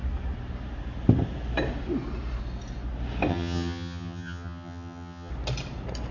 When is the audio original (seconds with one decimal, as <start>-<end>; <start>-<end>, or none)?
0.0-3.3; 5.3-6.1